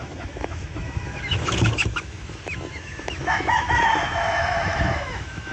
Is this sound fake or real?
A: fake